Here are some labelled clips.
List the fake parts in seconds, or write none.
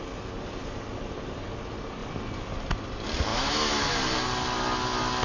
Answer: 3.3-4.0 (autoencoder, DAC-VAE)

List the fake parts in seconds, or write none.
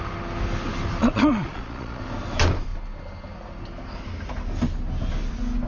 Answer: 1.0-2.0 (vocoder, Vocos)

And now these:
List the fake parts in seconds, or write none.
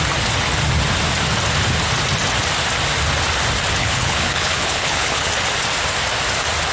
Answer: 3.8-5.3 (codec, HILCodec)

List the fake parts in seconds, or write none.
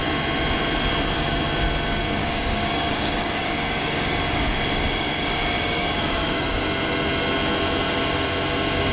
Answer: 2.2-6.6 (codec, DAC)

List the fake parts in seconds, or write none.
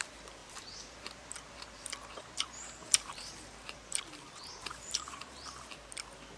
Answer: 0.4-4.0 (vocoder, BigVGAN v2); 4.7-5.3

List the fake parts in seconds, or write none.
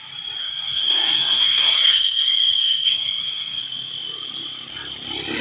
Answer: 0.4-3.6 (codec, SNAC)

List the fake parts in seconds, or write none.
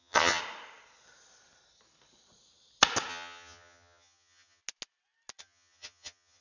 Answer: 0.0-0.4 (vocoder, HiFi-GAN); 3.1-4.6; 5.4-6.4